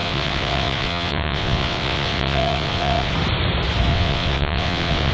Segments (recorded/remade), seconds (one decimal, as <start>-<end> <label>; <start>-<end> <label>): 0.0-3.1 remade; 3.1-3.9 recorded; 3.9-5.1 remade